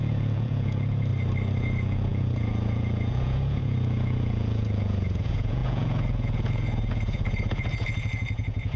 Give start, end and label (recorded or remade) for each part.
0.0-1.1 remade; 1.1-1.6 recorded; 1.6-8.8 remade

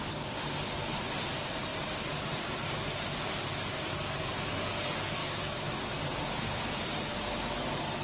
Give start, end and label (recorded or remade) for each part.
0.0-5.2 recorded; 5.2-6.0 remade; 6.0-8.0 recorded

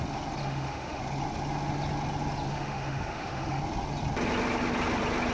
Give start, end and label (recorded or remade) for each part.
0.0-0.4 recorded; 0.4-1.0 remade; 1.0-2.5 recorded; 2.5-3.6 remade; 3.6-5.3 recorded